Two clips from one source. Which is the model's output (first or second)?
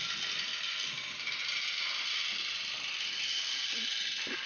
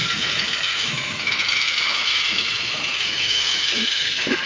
second